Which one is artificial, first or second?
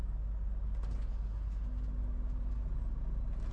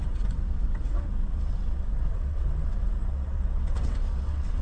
second